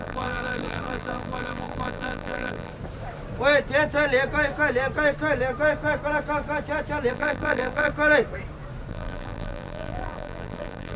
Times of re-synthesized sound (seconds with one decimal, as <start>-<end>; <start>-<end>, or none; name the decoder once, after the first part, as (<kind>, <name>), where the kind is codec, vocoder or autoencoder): 0.0-2.7 (vocoder, BigVGAN v2); 7.1-7.9; 8.9-11.0